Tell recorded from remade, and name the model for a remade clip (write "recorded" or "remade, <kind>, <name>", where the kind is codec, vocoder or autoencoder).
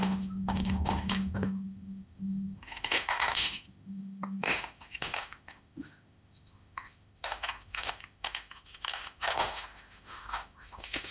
remade, autoencoder, DAC-VAE